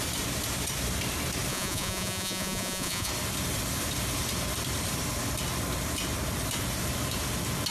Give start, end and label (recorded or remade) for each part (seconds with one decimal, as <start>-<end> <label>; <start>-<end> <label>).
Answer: 0.0-1.5 recorded; 1.5-3.1 remade; 3.1-7.7 recorded